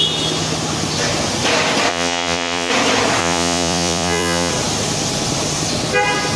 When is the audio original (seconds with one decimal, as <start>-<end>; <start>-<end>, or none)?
0.0-1.9; 2.7-3.2; 4.5-6.4